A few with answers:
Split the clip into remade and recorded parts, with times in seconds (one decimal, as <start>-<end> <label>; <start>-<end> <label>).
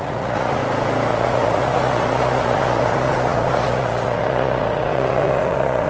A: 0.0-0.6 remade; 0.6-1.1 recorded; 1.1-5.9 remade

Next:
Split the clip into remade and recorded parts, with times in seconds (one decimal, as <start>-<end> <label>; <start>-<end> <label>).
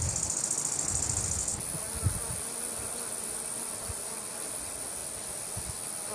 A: 0.0-6.1 recorded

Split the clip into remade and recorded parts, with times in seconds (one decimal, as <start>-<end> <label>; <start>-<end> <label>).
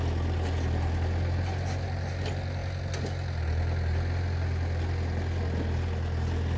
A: 0.0-6.6 recorded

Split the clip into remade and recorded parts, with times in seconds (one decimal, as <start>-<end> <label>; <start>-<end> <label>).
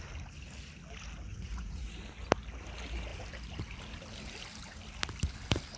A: 0.0-1.3 recorded; 1.3-2.0 remade; 2.0-5.8 recorded